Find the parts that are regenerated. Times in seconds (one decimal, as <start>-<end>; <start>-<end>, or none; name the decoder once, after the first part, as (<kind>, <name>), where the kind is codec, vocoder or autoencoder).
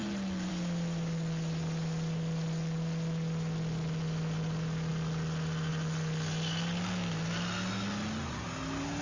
none